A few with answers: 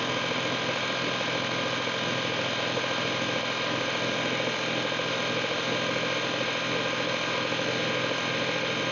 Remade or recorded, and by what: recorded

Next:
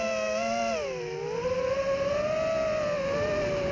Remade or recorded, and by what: recorded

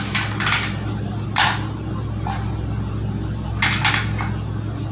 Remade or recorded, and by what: recorded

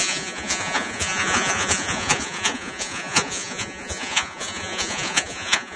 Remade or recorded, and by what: remade, vocoder, Vocos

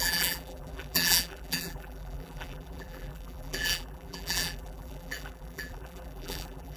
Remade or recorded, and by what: remade, vocoder, BigVGAN v2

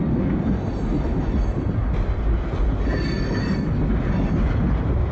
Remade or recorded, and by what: recorded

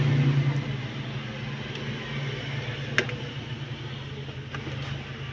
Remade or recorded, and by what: recorded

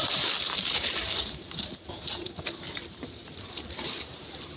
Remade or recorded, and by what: remade, vocoder, BigVGAN v2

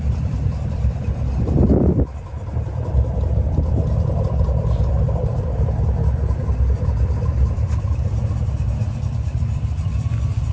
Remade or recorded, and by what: remade, vocoder, BigVGAN v2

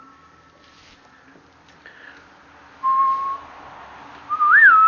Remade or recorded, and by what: recorded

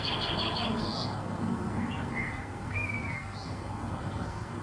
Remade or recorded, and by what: remade, codec, SNAC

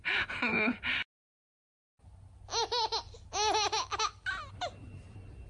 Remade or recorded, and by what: recorded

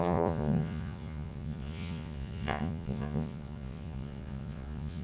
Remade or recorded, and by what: remade, vocoder, Vocos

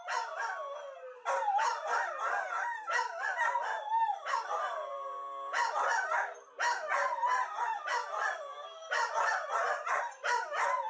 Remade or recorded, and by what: recorded